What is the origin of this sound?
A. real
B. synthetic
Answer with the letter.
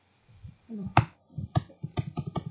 B